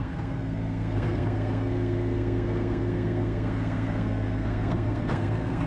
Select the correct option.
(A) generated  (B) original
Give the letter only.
A